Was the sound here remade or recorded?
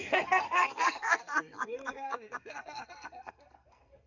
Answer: remade